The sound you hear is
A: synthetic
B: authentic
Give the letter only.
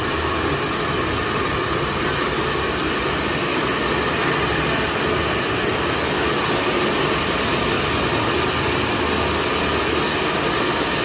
B